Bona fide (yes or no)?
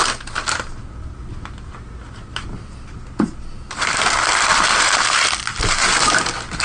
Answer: yes